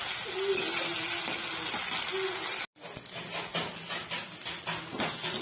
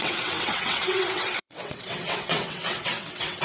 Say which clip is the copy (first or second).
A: second